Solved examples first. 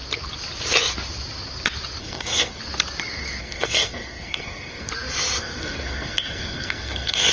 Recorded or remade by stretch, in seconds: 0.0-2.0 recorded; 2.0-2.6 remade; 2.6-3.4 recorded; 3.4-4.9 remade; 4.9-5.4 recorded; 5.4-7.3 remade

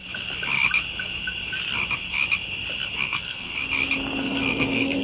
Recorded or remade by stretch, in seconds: 0.0-3.0 recorded; 3.0-3.5 remade; 3.5-4.2 recorded; 4.2-5.0 remade

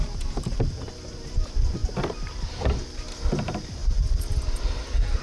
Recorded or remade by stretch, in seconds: 0.0-3.8 recorded; 3.8-5.2 remade